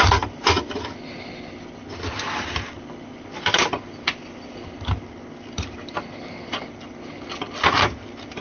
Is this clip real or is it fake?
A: real